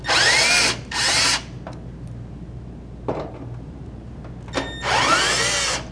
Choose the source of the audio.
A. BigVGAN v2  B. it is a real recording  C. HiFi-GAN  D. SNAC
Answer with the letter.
B